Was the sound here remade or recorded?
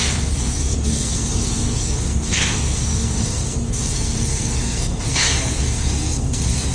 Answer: remade